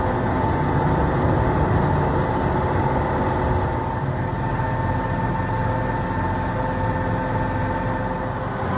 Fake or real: real